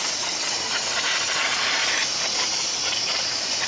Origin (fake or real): fake